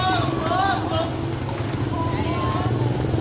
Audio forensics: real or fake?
real